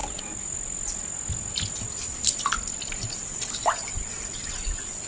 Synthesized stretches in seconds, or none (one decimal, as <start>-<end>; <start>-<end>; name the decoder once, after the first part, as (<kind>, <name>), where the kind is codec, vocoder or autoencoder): none